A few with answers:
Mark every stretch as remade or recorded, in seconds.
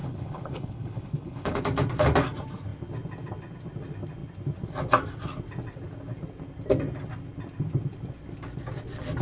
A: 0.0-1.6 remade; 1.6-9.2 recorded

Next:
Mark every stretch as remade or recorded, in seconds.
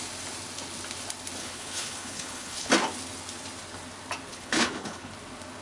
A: 0.0-1.4 recorded; 1.4-2.7 remade; 2.7-4.3 recorded; 4.3-5.1 remade; 5.1-5.6 recorded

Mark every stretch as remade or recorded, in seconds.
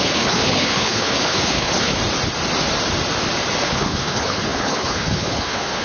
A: 0.0-2.0 remade; 2.0-3.6 recorded; 3.6-5.8 remade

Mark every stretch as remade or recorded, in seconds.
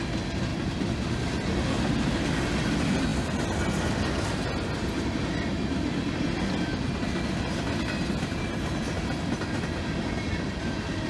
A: 0.0-11.1 recorded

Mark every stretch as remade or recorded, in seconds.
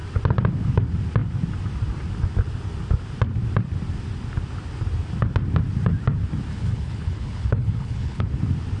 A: 0.0-6.5 recorded; 6.5-8.2 remade; 8.2-8.8 recorded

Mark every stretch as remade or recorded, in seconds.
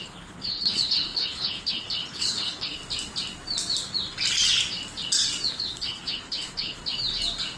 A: 0.0-2.8 remade; 2.8-5.5 recorded; 5.5-6.8 remade; 6.8-7.6 recorded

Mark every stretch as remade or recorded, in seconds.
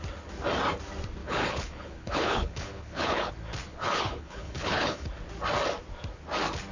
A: 0.0-1.2 recorded; 1.2-3.3 remade; 3.3-3.7 recorded; 3.7-5.1 remade; 5.1-6.7 recorded